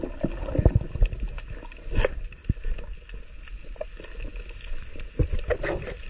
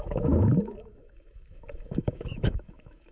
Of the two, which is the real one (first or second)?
first